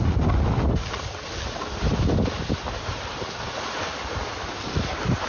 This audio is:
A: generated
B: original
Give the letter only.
B